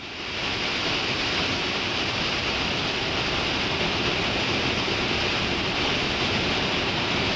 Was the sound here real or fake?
real